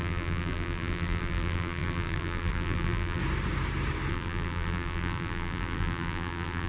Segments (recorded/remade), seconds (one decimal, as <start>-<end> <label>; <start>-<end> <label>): 0.0-3.2 remade; 3.2-4.1 recorded; 4.1-6.7 remade

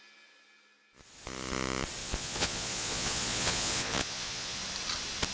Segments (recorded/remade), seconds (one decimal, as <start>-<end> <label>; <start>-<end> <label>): 0.0-2.0 recorded; 2.0-4.6 remade; 4.6-5.3 recorded

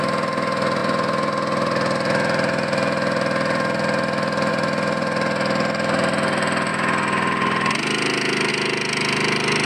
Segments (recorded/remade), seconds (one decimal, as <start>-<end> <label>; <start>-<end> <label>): 0.0-9.6 recorded

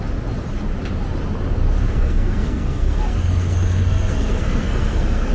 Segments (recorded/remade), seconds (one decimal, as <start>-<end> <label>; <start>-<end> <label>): 0.0-1.9 recorded; 1.9-5.3 remade

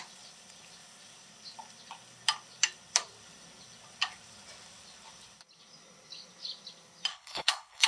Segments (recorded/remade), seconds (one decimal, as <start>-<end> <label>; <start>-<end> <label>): 0.0-7.1 recorded; 7.1-7.9 remade